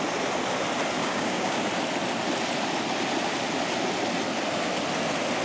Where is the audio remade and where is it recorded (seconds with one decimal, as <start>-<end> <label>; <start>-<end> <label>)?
0.0-1.0 recorded; 1.0-1.6 remade; 1.6-5.4 recorded